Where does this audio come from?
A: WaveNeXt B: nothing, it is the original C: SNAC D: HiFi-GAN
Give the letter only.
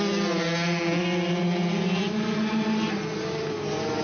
B